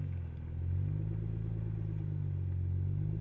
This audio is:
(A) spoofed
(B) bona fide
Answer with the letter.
B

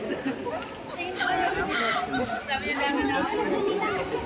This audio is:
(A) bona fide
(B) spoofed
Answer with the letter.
A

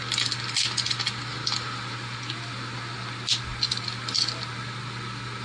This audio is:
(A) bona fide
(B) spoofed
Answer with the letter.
A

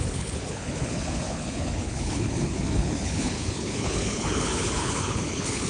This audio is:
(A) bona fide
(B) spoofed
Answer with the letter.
B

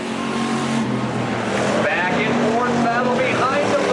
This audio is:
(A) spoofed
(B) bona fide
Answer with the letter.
B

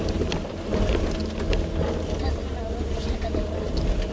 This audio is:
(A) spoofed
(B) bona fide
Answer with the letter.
B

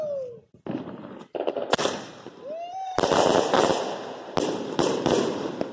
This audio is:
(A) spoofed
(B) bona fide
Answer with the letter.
B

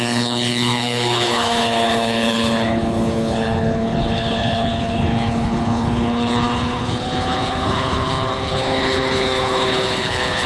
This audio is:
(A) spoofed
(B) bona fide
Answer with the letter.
A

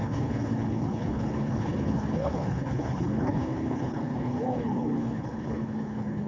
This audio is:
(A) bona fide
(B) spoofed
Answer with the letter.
B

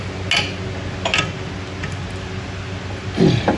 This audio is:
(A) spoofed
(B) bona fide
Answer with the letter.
B